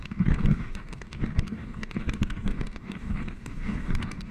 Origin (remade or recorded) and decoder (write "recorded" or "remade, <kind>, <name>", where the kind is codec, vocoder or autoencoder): remade, codec, DAC